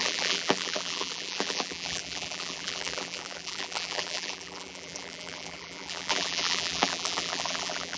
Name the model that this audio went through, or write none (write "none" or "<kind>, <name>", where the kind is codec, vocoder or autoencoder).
vocoder, BigVGAN v2